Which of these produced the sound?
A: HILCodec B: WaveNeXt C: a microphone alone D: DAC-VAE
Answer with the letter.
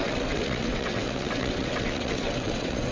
B